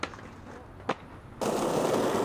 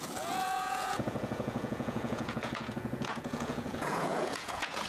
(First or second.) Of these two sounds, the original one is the first